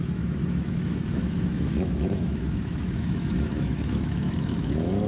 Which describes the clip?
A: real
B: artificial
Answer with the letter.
B